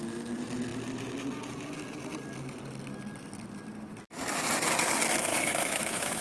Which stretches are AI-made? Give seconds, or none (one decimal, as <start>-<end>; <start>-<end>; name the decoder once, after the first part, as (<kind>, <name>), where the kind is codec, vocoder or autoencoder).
5.3-6.2 (autoencoder, DAC-VAE)